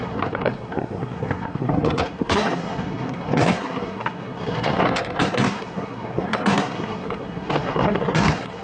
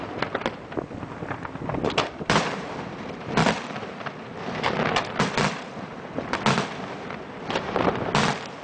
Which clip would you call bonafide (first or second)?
second